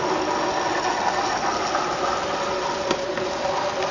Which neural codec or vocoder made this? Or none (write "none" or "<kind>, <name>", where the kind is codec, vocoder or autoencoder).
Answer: none